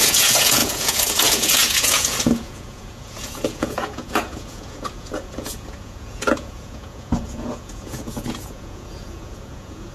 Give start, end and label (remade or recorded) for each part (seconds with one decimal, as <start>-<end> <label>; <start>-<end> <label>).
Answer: 0.0-9.9 remade